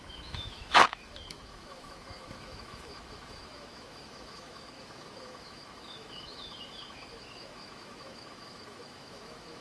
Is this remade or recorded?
remade